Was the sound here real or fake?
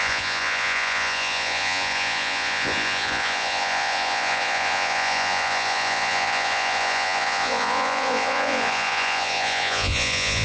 fake